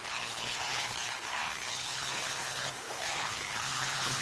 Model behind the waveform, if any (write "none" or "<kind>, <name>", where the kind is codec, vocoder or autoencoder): codec, HILCodec